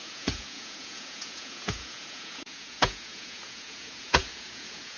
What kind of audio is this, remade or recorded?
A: remade